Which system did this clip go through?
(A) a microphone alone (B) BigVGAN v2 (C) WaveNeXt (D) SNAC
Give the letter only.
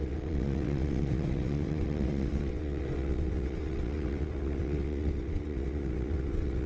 C